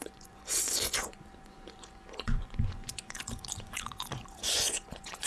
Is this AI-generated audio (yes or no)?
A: yes